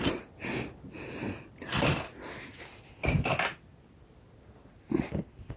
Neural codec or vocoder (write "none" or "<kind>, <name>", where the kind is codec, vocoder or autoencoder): none